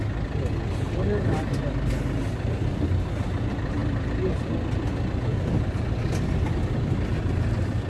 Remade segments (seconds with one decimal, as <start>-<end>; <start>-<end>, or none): none